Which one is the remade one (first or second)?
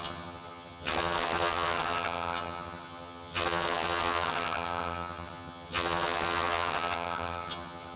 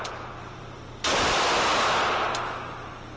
first